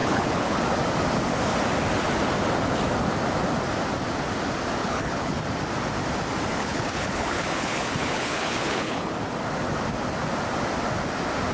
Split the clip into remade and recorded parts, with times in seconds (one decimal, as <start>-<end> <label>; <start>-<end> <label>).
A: 0.0-0.6 remade; 0.6-4.8 recorded; 4.8-5.4 remade; 5.4-6.6 recorded; 6.6-9.1 remade; 9.1-11.5 recorded